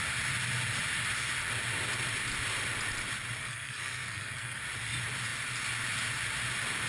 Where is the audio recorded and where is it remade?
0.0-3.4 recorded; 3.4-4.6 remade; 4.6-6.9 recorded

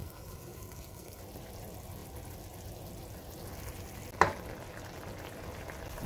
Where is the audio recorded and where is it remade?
0.0-1.2 remade; 1.2-6.1 recorded

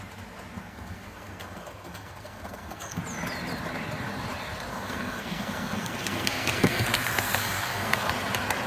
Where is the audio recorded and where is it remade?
0.0-0.6 recorded; 0.6-3.0 remade; 3.0-4.7 recorded; 4.7-8.1 remade; 8.1-8.7 recorded

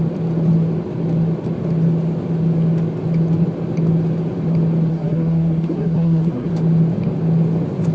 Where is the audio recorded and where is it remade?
0.0-4.9 recorded; 4.9-6.5 remade; 6.5-7.9 recorded

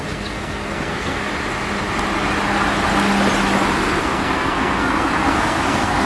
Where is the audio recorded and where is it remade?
0.0-1.3 remade; 1.3-4.0 recorded; 4.0-6.1 remade

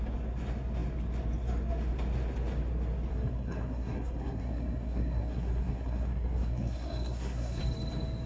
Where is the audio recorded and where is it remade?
0.0-3.1 recorded; 3.1-7.6 remade; 7.6-8.3 recorded

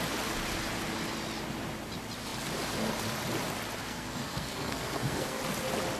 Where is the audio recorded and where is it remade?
0.0-3.8 recorded; 3.8-5.4 remade; 5.4-6.0 recorded